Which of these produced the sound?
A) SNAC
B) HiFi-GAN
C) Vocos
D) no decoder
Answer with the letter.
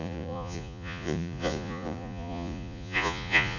C